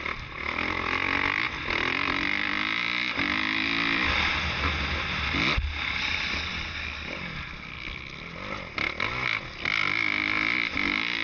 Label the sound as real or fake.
real